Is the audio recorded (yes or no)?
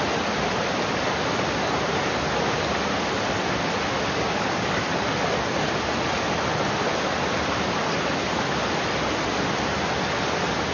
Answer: yes